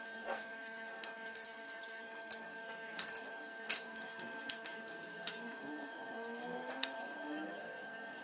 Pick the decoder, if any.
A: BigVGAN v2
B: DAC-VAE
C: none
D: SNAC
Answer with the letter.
D